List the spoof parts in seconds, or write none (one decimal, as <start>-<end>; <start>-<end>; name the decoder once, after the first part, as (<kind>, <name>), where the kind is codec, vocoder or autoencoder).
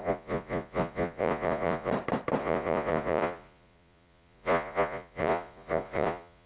0.0-1.9 (vocoder, Vocos); 2.4-6.5